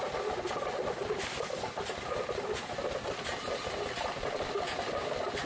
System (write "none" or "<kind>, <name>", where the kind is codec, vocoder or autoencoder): none